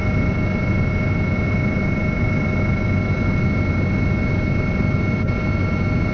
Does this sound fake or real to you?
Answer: real